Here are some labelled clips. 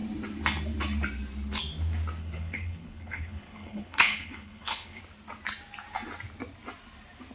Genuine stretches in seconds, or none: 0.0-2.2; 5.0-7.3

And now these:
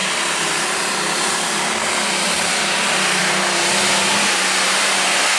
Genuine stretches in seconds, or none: 0.0-5.4